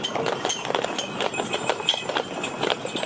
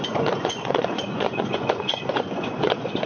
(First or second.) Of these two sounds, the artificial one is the second